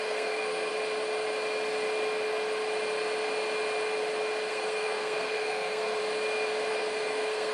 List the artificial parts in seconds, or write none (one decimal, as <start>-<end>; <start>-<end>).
0.0-0.7; 4.5-6.0; 6.7-7.5